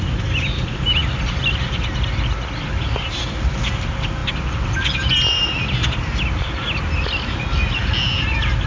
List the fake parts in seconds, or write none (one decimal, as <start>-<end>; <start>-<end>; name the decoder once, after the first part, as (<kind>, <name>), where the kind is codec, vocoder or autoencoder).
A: none